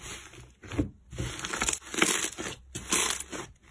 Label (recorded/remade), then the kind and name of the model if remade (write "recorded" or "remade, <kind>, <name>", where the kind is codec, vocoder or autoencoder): recorded